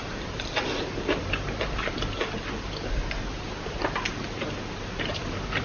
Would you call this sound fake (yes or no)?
no